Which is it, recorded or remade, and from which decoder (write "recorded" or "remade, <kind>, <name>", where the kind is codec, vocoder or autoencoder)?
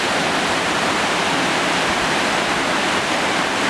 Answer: recorded